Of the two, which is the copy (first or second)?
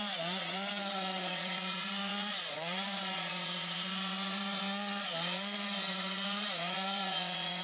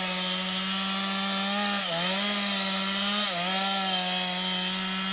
first